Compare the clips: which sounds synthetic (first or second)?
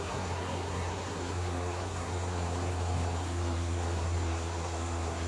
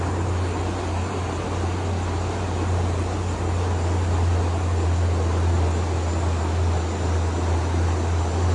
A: first